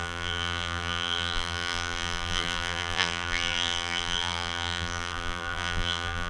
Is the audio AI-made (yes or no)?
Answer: yes